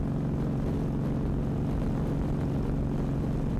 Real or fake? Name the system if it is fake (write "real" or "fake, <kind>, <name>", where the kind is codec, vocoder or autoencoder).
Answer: real